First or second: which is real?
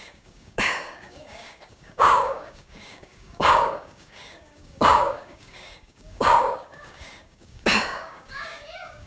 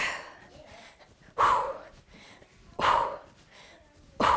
second